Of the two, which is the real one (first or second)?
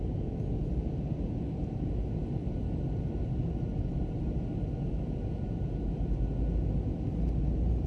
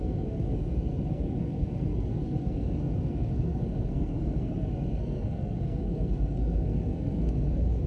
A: first